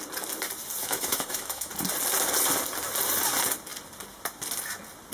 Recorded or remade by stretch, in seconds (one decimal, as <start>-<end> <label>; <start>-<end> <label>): 0.0-0.8 recorded; 0.8-1.7 remade; 1.7-5.1 recorded